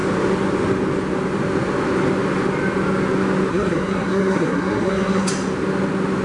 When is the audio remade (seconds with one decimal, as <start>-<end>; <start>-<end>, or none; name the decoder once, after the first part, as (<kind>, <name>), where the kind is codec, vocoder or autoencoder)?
3.5-5.3 (codec, SNAC)